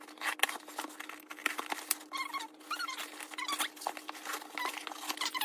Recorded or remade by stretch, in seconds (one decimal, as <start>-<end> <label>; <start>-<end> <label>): 0.0-5.4 recorded